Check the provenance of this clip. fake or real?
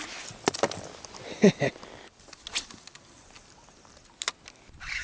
real